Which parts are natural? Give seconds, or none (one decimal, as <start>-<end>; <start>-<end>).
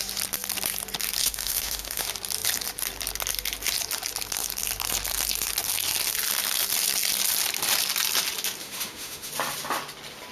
0.0-1.2; 2.0-8.6; 9.3-10.3